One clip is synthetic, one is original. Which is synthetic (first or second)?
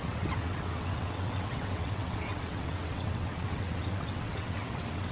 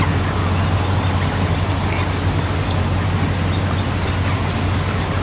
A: first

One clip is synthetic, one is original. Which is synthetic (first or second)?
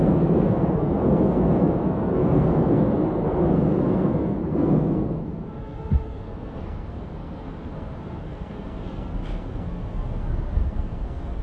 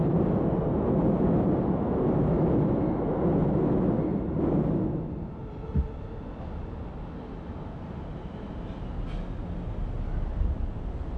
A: first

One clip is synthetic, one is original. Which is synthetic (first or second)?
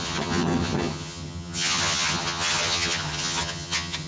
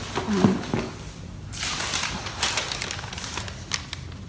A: first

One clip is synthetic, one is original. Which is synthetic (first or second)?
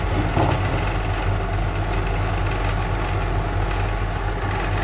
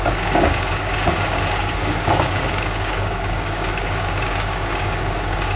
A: second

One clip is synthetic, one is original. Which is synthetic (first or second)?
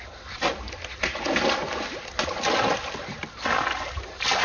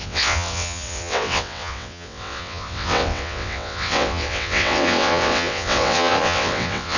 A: second